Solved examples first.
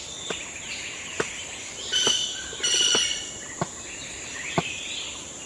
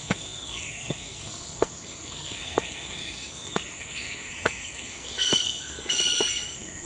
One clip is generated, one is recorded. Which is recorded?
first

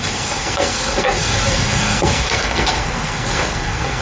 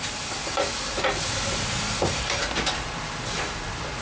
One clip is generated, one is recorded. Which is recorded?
second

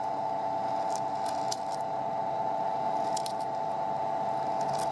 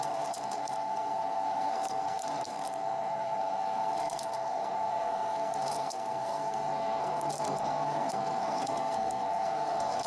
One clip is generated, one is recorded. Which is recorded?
first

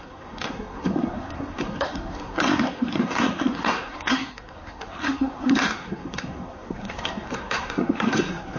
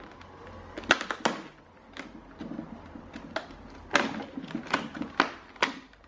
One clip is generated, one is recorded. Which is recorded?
second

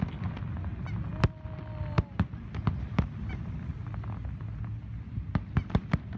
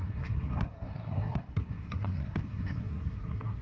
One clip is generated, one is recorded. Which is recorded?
first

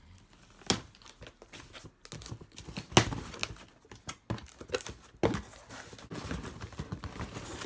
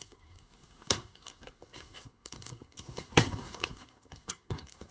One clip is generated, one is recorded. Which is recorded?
first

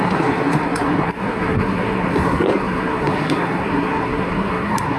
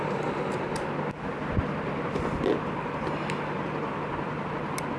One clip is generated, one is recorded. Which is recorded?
second